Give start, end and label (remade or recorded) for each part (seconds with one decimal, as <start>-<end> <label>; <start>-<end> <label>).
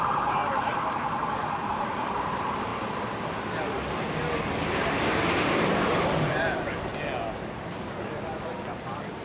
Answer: 0.0-0.4 remade; 0.4-2.1 recorded; 2.1-2.7 remade; 2.7-4.8 recorded; 4.8-6.9 remade; 6.9-7.7 recorded; 7.7-9.2 remade